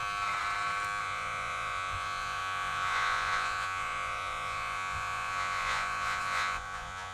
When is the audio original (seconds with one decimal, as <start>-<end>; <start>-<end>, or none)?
0.0-1.0